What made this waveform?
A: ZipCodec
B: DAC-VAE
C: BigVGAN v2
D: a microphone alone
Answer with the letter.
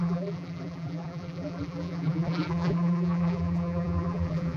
C